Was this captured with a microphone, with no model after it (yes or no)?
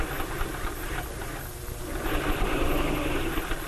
yes